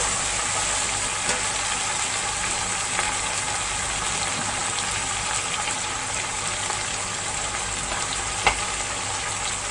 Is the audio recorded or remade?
recorded